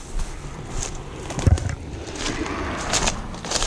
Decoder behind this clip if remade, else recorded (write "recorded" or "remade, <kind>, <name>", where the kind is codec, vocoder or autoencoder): recorded